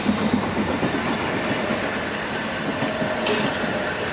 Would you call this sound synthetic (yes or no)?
no